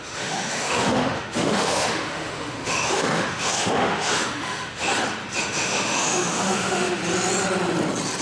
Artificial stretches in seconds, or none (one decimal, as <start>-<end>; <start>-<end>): 0.0-4.9; 5.4-7.0